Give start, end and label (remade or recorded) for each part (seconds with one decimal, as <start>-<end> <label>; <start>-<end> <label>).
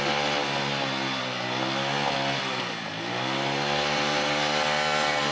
0.0-5.3 recorded